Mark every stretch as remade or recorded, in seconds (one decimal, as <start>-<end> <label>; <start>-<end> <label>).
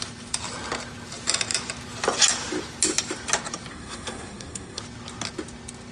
0.0-3.7 recorded; 3.7-4.8 remade; 4.8-5.9 recorded